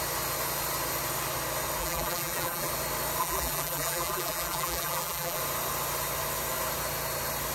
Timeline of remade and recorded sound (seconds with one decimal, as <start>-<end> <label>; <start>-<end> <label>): 0.0-1.8 recorded; 1.8-2.7 remade; 2.7-3.2 recorded; 3.2-5.4 remade; 5.4-7.5 recorded